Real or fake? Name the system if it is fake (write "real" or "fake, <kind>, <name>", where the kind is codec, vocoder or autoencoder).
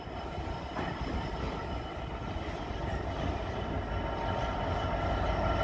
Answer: real